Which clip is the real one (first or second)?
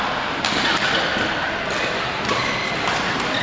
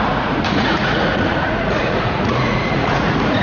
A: first